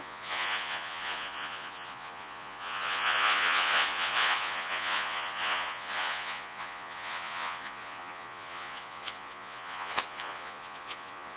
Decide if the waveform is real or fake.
fake